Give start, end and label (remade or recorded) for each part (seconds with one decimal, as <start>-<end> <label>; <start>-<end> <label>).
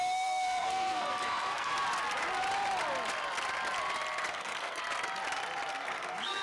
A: 0.0-1.7 remade; 1.7-4.3 recorded; 4.3-4.8 remade; 4.8-5.7 recorded; 5.7-6.4 remade